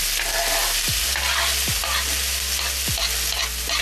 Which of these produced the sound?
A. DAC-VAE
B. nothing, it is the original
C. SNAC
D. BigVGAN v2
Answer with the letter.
B